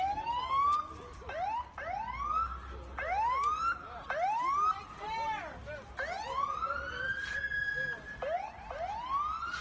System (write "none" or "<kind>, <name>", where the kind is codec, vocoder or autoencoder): none